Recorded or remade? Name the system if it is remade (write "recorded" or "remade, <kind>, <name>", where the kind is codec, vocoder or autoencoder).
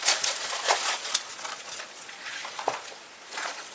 remade, vocoder, Vocos